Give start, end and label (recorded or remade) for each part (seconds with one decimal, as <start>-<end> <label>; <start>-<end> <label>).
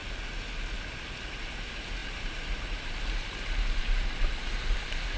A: 0.0-1.3 recorded; 1.3-5.2 remade